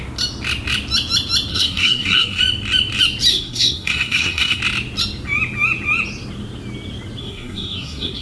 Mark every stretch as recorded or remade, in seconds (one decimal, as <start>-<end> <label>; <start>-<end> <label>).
0.0-1.5 recorded; 1.5-2.4 remade; 2.4-3.3 recorded; 3.3-4.6 remade; 4.6-7.2 recorded; 7.2-8.2 remade